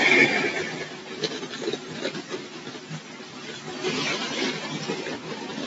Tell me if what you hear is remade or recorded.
recorded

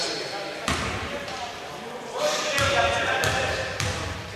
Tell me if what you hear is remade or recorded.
remade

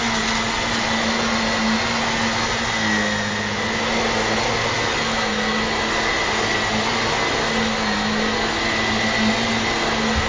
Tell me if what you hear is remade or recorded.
recorded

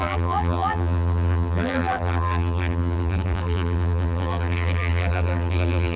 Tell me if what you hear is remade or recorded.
remade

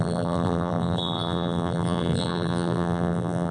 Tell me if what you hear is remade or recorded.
remade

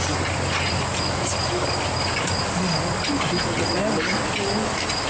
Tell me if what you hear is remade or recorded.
recorded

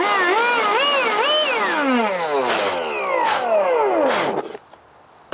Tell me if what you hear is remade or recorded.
recorded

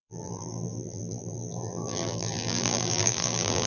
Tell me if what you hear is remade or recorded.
remade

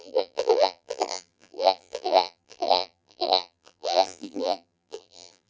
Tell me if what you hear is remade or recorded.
remade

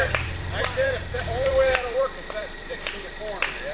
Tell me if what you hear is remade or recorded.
remade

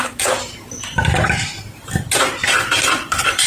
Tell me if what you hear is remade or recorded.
remade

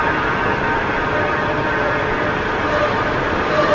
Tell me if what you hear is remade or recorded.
remade